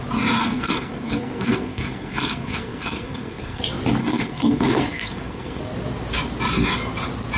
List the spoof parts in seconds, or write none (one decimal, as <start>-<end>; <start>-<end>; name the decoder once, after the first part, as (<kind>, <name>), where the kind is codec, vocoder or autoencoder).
0.4-3.6 (codec, SNAC); 4.0-5.6